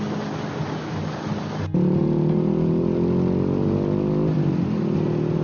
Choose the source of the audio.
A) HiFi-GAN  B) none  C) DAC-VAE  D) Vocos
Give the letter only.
B